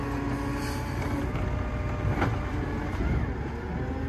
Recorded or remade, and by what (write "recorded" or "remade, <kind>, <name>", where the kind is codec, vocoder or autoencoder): recorded